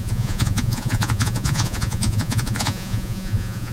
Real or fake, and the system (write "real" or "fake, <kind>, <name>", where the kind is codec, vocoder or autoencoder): fake, vocoder, Vocos